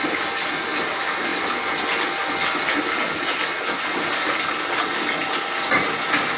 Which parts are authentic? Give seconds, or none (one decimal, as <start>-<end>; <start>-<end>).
0.0-6.4